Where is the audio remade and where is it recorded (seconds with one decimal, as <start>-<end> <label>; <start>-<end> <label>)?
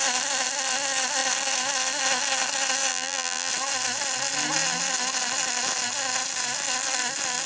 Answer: 0.0-2.9 recorded; 2.9-3.5 remade; 3.5-7.5 recorded